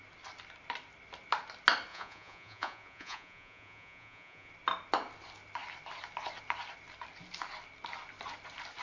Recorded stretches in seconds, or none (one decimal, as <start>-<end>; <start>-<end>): 0.0-1.9; 4.5-8.8